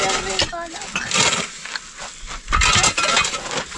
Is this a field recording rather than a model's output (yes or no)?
yes